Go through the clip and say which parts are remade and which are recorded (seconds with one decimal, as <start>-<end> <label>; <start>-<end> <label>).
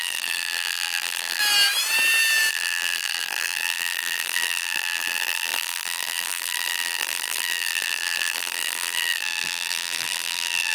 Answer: 0.0-1.4 remade; 1.4-2.5 recorded; 2.5-10.7 remade